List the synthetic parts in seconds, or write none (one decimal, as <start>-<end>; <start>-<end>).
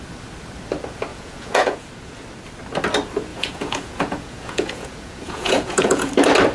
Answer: 1.1-2.1; 3.3-6.1